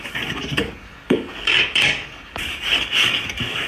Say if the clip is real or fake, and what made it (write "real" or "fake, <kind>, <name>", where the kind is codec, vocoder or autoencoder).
fake, codec, DAC